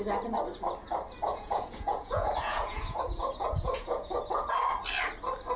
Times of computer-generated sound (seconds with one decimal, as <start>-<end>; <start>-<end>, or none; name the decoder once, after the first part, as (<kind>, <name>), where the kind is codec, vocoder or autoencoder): 1.3-4.2 (vocoder, Vocos)